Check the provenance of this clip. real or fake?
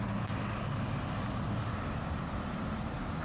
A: real